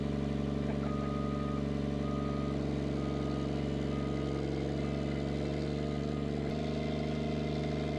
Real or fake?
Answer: real